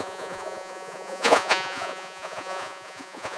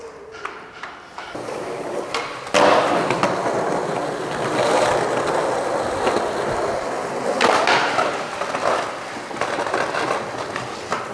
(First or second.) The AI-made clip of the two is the first